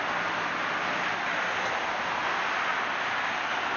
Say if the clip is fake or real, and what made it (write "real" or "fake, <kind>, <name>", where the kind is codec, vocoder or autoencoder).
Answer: real